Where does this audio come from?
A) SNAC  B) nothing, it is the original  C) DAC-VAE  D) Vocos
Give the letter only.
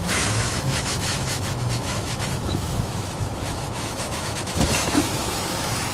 C